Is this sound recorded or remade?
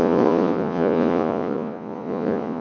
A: remade